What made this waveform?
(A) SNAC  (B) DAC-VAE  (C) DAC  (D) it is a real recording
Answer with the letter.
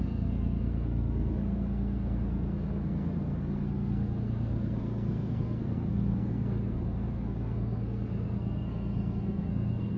A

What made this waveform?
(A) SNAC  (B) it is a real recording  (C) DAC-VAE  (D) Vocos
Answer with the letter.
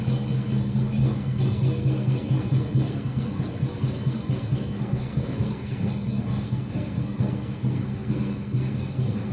A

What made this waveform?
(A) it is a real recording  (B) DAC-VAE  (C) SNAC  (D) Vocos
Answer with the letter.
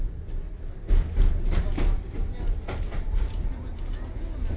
A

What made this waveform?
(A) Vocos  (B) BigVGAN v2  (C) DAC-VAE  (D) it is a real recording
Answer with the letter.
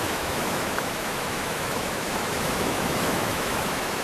C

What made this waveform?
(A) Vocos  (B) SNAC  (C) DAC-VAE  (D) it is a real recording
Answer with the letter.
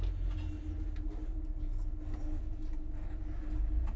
D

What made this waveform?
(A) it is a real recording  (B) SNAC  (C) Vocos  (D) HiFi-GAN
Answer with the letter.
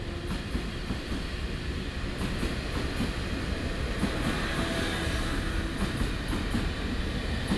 A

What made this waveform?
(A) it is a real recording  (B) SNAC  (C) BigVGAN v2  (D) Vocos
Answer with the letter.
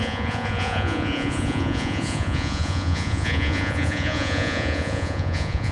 D